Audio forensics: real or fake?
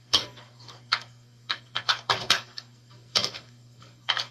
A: fake